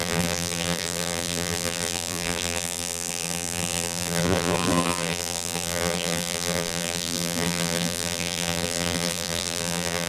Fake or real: fake